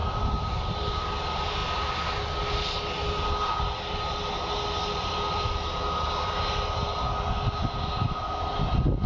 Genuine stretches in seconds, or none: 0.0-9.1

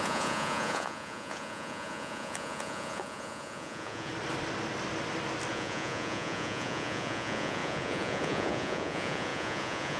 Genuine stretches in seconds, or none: 4.1-5.5

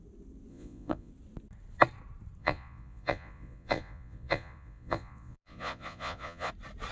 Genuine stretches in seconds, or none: 0.0-0.5; 1.1-2.4; 6.5-6.9

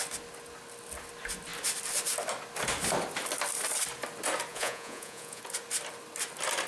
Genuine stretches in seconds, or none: 0.0-4.5; 5.4-6.7

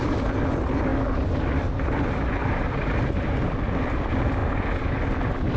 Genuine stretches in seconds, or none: 0.0-5.6

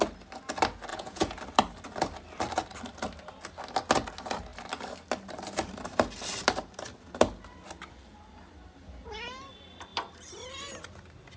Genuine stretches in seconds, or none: 0.0-0.9; 1.4-11.4

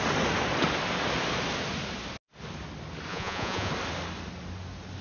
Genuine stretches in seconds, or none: 0.0-3.1; 3.7-5.0